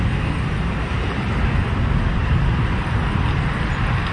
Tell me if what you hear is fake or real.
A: real